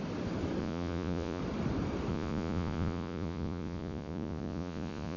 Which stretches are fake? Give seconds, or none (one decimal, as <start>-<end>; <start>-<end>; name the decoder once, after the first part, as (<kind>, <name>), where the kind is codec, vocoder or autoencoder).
0.6-1.4 (vocoder, Vocos); 2.1-5.2